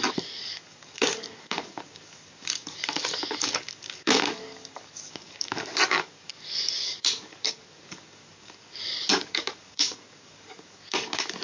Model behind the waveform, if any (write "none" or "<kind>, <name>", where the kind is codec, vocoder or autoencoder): codec, DAC